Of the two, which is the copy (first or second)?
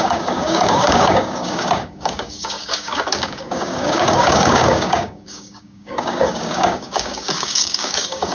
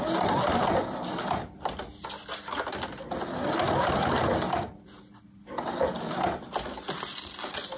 first